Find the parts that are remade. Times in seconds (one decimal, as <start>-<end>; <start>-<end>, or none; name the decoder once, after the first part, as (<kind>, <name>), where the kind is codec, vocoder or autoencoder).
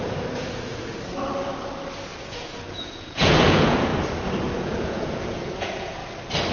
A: 0.0-0.7 (vocoder, Vocos); 2.2-3.9; 4.5-6.0